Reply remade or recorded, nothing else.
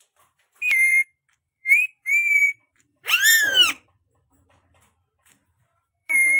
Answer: remade